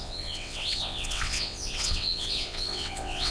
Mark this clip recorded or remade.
remade